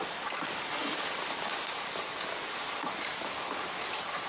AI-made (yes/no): no